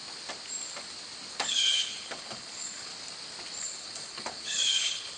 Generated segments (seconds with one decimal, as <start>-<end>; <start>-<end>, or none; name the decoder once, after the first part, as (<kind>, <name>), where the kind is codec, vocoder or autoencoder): 1.3-2.9 (codec, HILCodec); 3.6-5.2